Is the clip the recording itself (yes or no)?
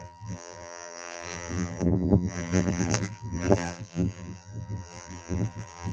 no